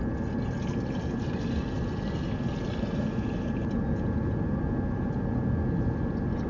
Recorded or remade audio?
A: recorded